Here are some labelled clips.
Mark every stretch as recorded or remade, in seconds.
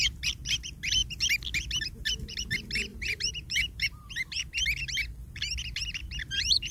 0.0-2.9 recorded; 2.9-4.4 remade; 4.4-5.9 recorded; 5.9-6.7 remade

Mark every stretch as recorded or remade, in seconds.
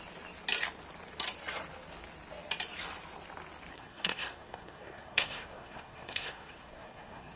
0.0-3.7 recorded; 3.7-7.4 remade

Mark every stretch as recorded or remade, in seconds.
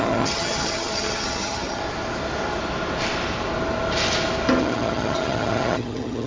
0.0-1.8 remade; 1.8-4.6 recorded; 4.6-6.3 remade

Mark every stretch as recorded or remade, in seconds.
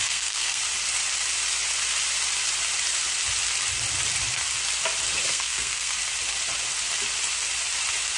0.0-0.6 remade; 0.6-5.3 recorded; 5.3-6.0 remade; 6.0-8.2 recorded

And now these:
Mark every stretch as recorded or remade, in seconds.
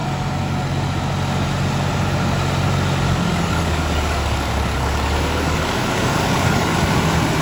0.0-3.1 recorded; 3.1-6.7 remade; 6.7-7.4 recorded